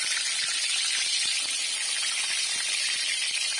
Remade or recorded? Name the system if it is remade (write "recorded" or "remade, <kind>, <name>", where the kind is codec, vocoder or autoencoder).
recorded